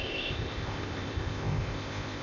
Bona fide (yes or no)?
no